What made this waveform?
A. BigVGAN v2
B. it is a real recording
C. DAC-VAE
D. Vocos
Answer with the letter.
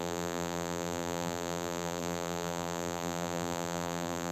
A